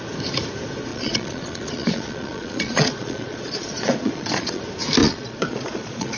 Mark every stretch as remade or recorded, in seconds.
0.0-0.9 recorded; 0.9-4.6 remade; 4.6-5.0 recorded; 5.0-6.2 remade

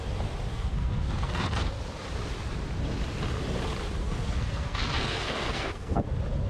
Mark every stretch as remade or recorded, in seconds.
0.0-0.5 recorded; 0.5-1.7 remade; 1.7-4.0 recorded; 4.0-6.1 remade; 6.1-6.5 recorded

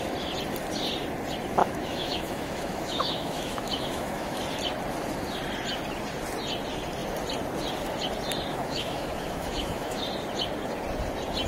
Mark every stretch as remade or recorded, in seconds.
0.0-1.6 recorded; 1.6-4.4 remade; 4.4-8.5 recorded; 8.5-10.0 remade; 10.0-11.5 recorded

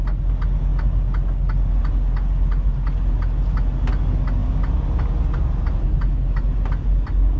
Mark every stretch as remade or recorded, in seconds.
0.0-7.4 recorded

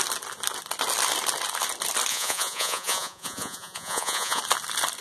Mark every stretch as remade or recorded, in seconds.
0.0-2.1 recorded; 2.1-4.4 remade; 4.4-5.0 recorded